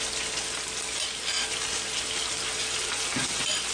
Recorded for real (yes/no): yes